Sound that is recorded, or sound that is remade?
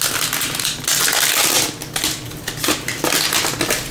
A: recorded